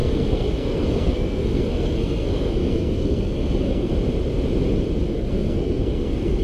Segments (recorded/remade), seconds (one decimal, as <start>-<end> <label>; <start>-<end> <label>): 0.0-3.9 remade; 3.9-5.1 recorded; 5.1-6.4 remade